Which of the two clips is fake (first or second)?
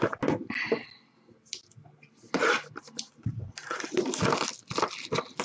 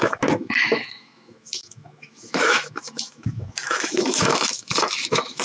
second